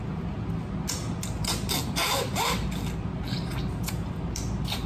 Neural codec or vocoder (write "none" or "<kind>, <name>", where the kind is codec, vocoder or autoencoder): none